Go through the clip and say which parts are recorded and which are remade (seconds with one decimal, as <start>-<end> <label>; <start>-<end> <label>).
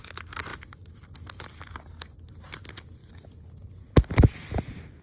0.0-3.0 recorded; 3.0-4.5 remade; 4.5-5.0 recorded